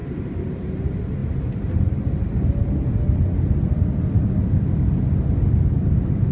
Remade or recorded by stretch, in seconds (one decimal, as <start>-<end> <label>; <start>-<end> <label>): 0.0-0.5 remade; 0.5-6.3 recorded